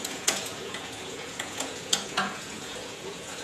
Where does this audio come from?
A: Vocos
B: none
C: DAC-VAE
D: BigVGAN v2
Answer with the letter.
A